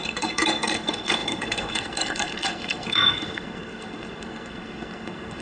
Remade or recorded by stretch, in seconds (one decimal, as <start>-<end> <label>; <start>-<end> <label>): 0.0-5.4 remade